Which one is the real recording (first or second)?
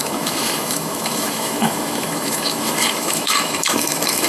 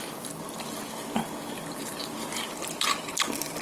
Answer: second